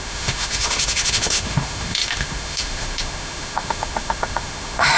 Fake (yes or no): yes